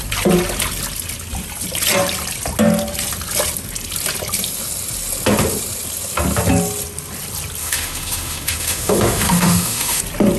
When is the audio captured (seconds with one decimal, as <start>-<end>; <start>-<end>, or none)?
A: 0.0-7.6; 10.0-10.4